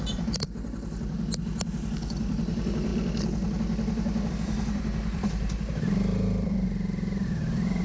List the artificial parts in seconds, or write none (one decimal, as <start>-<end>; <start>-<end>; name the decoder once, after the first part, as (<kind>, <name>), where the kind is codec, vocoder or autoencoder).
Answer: 0.0-2.9 (vocoder, BigVGAN v2); 4.3-7.8